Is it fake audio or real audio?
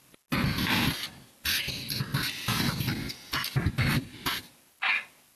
real